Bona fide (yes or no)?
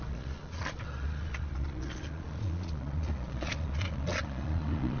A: no